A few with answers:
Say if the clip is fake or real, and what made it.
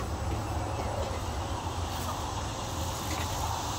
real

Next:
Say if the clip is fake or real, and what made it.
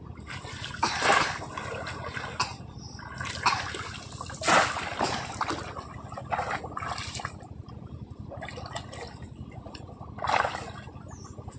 real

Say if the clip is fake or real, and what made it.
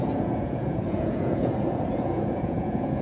fake, vocoder, Vocos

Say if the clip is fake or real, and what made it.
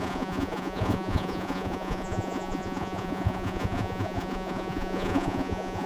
fake, vocoder, Vocos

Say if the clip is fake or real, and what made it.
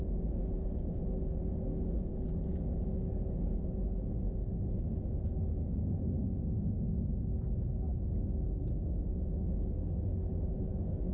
real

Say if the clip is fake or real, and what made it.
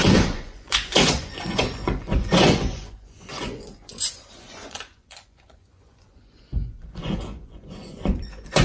fake, vocoder, Vocos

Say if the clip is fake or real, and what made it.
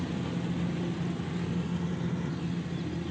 real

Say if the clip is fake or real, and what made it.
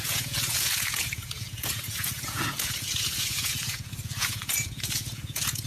fake, vocoder, Vocos